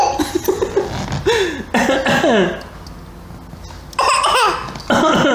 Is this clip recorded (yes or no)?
yes